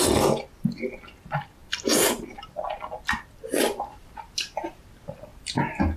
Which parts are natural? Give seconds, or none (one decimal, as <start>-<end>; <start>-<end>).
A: 0.0-1.6; 4.2-5.3